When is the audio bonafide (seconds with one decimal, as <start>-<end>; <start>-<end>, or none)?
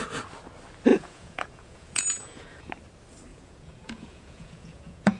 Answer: 0.0-0.9; 2.7-3.3